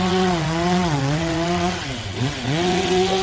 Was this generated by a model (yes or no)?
yes